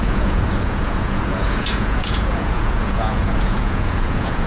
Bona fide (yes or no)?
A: no